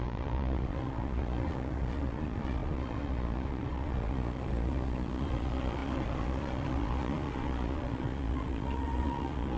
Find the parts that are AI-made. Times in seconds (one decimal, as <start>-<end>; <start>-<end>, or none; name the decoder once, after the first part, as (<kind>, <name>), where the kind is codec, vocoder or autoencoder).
0.0-9.6 (vocoder, Vocos)